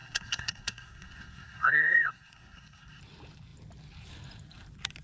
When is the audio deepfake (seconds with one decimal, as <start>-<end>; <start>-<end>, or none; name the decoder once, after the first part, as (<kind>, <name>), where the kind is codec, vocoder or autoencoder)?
0.0-3.0 (codec, SNAC)